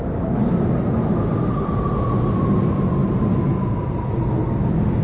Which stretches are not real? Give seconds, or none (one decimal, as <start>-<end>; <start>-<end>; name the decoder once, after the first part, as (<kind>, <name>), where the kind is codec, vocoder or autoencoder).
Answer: none